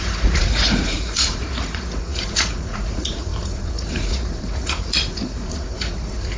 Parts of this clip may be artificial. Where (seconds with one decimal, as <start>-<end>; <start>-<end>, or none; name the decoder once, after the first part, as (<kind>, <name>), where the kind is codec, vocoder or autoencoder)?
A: 0.0-6.4 (vocoder, Vocos)